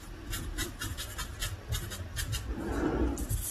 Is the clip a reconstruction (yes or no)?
no